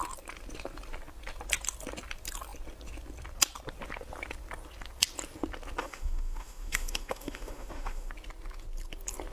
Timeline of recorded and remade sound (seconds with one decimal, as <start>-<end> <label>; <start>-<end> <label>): 0.0-5.8 recorded; 5.8-8.1 remade; 8.1-9.3 recorded